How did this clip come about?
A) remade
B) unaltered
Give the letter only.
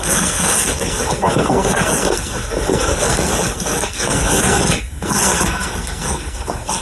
A